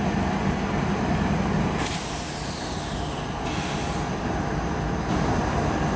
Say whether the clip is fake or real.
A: real